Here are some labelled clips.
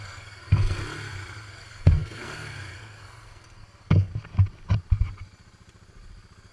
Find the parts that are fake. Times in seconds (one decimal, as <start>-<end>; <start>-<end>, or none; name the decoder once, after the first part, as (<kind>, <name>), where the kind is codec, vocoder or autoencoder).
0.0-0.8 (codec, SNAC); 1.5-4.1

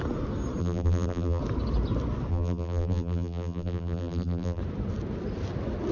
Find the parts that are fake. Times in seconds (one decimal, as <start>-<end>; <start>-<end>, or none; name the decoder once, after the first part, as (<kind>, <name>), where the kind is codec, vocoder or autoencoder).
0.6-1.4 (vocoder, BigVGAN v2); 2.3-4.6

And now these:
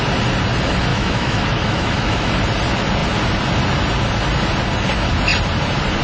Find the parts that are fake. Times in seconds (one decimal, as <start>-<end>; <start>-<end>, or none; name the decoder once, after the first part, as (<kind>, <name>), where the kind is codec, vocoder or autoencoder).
0.9-2.3 (autoencoder, DAC-VAE)